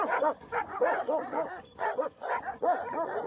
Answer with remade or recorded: remade